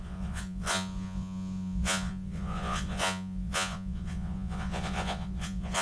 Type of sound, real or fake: fake